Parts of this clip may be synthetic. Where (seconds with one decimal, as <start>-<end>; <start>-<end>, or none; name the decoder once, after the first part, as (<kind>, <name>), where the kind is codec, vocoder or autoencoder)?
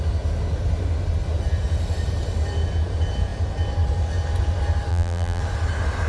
4.9-5.4 (vocoder, BigVGAN v2)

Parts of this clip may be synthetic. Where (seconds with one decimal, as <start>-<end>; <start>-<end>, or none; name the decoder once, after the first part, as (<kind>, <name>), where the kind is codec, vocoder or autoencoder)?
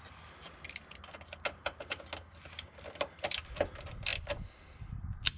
none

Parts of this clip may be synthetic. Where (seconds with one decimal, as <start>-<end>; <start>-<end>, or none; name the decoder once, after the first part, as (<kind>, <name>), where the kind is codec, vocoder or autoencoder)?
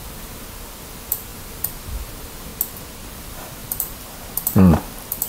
0.0-2.5 (vocoder, BigVGAN v2); 3.1-5.3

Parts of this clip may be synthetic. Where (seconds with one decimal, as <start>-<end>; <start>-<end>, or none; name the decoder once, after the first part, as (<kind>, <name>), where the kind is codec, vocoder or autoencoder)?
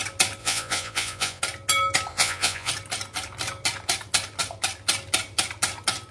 0.4-1.4 (vocoder, Vocos); 2.1-2.7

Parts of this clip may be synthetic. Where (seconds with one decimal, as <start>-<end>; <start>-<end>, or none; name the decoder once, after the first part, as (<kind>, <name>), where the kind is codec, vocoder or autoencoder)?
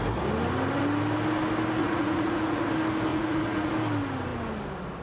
1.8-2.7 (vocoder, Vocos); 3.1-3.7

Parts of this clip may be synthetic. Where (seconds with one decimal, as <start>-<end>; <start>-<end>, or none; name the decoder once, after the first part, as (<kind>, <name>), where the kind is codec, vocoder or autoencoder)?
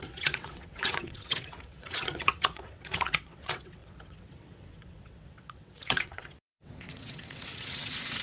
0.0-8.2 (vocoder, WaveNeXt)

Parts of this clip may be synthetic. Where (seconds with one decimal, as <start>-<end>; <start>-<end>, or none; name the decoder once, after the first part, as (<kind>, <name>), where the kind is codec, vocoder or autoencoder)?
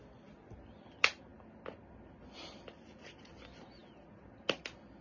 none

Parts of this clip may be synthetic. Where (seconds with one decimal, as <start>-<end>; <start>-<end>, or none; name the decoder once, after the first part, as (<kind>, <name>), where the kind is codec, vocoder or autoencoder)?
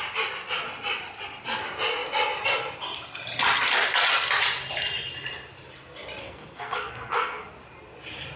6.2-7.5 (codec, SNAC)